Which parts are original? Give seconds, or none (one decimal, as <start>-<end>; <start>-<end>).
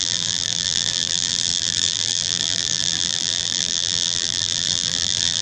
none